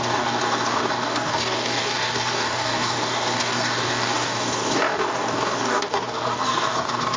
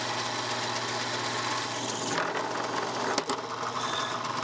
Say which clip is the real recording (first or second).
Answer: second